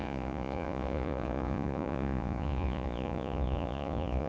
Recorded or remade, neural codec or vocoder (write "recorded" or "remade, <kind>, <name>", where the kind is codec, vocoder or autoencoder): remade, vocoder, Vocos